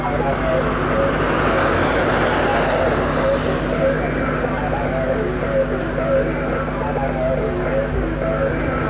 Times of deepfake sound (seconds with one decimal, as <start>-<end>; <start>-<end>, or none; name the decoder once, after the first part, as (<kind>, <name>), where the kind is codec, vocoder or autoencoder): none